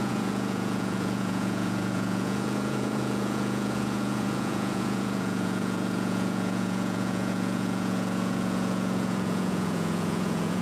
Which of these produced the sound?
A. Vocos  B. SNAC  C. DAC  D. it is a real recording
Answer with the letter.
A